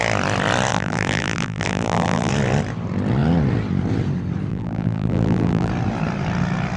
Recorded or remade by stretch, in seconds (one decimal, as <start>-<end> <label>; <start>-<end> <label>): 0.0-0.7 recorded; 0.7-2.3 remade; 2.3-4.5 recorded; 4.5-5.7 remade; 5.7-6.8 recorded